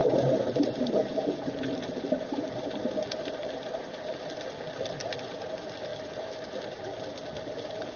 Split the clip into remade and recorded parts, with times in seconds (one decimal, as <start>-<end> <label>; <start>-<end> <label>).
0.0-4.2 remade; 4.2-5.0 recorded; 5.0-5.5 remade; 5.5-8.0 recorded